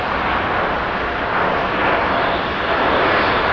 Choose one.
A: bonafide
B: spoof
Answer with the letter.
A